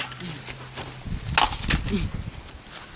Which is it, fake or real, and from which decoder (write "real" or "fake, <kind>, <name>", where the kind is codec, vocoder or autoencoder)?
real